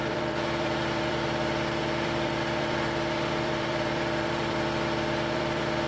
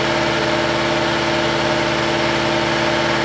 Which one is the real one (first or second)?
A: second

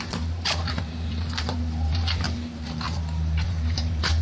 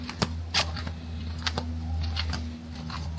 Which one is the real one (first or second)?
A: second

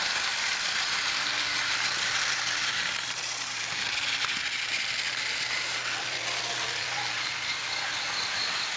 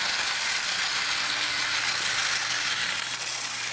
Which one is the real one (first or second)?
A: second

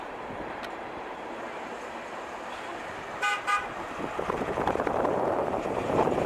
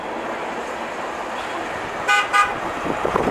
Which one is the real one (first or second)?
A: second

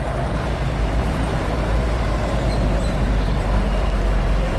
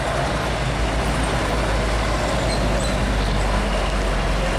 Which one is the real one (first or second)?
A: second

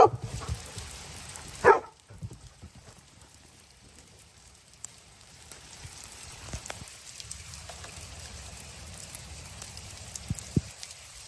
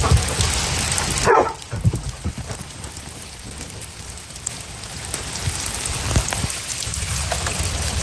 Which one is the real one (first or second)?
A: second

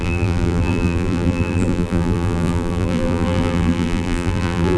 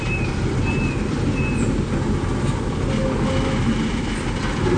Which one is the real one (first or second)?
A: second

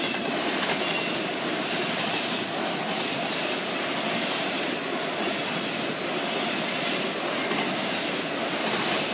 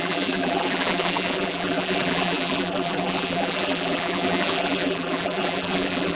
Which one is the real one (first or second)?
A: first